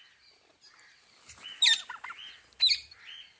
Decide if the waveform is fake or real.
real